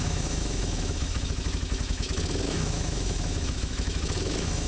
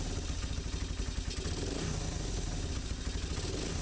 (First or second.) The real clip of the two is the second